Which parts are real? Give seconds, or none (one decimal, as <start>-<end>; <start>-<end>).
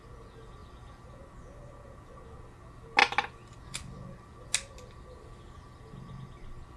0.0-6.8